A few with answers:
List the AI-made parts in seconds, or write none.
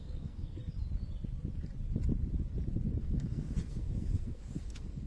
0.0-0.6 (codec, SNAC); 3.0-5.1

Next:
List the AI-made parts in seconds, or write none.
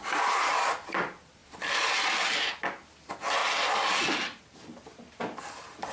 1.4-2.3 (vocoder, BigVGAN v2)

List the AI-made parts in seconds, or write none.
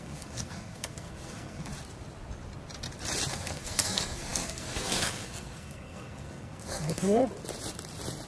0.0-1.7 (codec, SNAC); 3.3-7.2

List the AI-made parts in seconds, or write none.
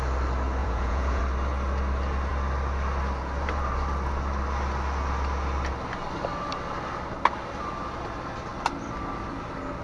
0.6-1.2 (vocoder, Vocos)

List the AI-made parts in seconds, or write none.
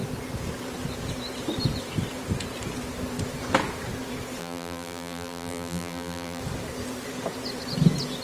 4.4-6.4 (vocoder, BigVGAN v2)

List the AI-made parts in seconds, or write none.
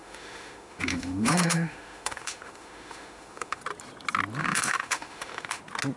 0.0-3.6 (autoencoder, DAC-VAE); 4.4-5.6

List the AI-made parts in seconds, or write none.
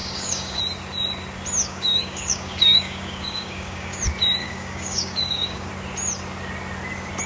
0.0-0.6 (codec, DAC); 1.6-4.0; 4.4-5.7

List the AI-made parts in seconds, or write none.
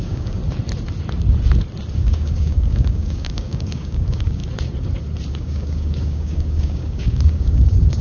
0.0-0.4 (codec, DAC); 2.0-4.4; 5.3-8.0